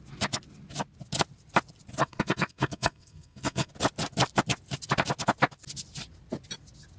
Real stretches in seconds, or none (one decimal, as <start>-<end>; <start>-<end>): 0.0-2.0; 3.7-7.0